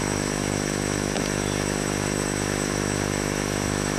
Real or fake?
fake